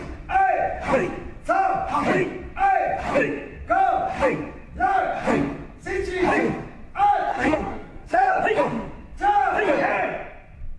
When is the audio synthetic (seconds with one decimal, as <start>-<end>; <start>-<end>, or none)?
7.3-8.4